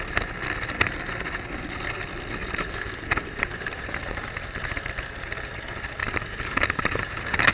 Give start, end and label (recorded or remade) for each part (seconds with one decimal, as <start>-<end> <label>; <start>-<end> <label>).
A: 0.0-2.4 recorded; 2.4-4.9 remade; 4.9-6.0 recorded; 6.0-7.5 remade